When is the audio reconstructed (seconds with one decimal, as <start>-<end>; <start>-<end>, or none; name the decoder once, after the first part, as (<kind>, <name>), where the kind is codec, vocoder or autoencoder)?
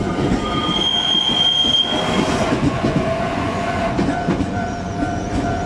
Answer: 0.0-0.6 (vocoder, Vocos); 2.4-5.7